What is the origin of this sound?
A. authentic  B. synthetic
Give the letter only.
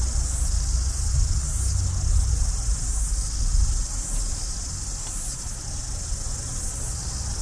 A